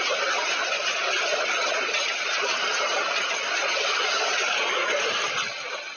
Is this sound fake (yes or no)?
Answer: no